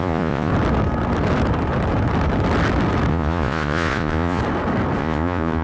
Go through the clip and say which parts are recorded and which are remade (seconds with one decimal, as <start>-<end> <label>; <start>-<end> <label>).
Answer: 0.0-0.5 remade; 0.5-3.1 recorded; 3.1-4.4 remade; 4.4-5.0 recorded; 5.0-5.6 remade